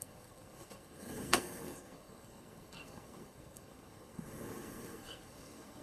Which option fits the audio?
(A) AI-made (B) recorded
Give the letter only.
A